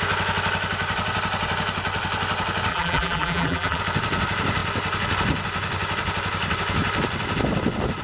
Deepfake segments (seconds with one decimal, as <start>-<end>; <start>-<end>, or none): 2.7-3.8